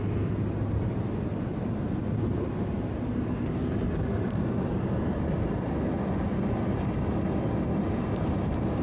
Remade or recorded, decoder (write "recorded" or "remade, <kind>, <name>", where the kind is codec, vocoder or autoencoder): recorded